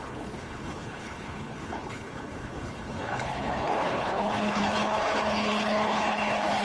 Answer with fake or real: fake